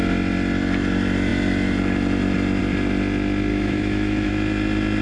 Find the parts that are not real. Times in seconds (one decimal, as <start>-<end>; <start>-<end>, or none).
3.5-4.3